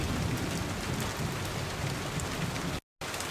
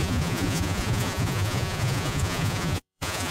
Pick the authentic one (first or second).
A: first